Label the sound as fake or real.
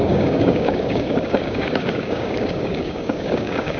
fake